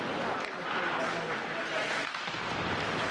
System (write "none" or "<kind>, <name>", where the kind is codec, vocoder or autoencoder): none